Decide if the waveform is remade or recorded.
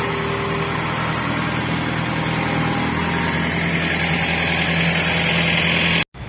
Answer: recorded